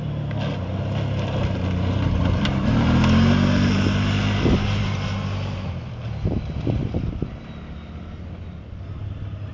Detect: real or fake real